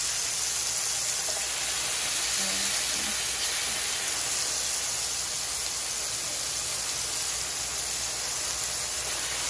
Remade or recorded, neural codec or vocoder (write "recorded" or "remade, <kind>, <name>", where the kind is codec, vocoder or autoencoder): recorded